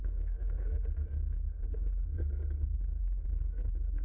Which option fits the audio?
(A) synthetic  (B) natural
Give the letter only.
A